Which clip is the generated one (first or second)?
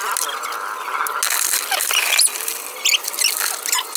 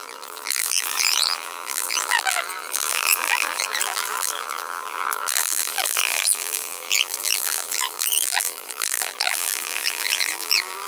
second